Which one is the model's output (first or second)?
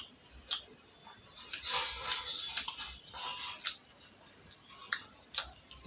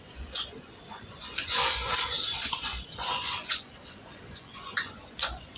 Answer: second